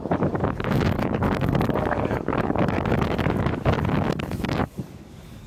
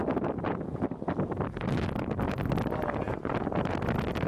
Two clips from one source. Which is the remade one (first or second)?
first